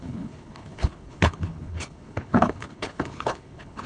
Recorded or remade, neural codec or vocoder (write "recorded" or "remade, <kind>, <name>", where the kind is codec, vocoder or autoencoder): remade, codec, HILCodec